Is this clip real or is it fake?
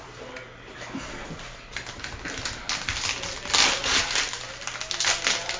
real